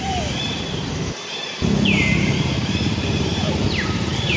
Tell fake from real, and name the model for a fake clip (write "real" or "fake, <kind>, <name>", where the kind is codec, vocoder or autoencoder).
fake, vocoder, BigVGAN v2